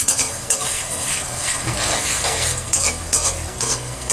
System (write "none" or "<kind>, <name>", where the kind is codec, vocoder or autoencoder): codec, SNAC